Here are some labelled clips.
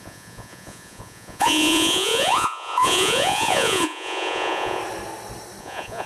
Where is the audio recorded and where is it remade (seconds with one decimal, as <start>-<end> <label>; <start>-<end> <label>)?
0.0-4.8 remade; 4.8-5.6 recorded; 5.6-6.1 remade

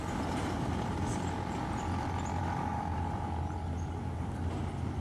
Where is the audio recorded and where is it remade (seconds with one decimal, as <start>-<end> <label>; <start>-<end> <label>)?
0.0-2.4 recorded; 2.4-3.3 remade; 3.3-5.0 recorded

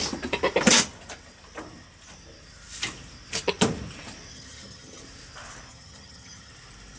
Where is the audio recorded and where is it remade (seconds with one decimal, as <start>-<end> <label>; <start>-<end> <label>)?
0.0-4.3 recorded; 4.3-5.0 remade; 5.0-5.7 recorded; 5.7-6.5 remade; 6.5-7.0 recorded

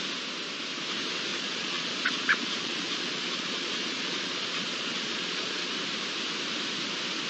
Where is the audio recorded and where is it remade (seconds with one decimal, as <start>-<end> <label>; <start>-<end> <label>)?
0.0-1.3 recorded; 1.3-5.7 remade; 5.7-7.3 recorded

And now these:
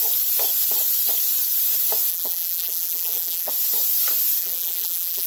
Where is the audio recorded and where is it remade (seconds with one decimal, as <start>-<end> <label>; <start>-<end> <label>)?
0.0-2.1 recorded; 2.1-3.5 remade; 3.5-4.4 recorded; 4.4-5.3 remade